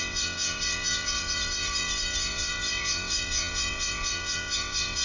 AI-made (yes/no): yes